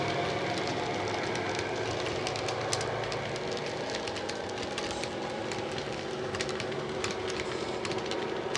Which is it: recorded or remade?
recorded